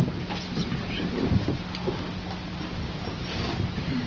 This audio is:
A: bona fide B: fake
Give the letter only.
A